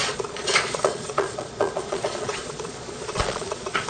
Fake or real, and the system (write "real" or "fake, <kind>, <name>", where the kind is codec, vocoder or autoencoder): fake, vocoder, Vocos